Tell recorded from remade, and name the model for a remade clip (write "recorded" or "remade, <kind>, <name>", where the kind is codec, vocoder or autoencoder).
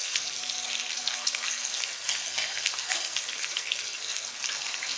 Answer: remade, codec, SNAC